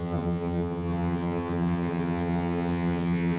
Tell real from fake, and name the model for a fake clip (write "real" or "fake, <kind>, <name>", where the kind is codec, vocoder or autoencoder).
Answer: fake, vocoder, HiFi-GAN